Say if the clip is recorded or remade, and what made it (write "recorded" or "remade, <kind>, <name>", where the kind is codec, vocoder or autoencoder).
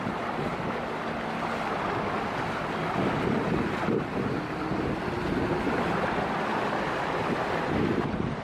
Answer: recorded